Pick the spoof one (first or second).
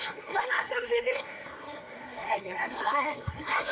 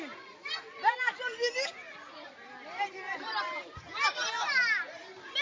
first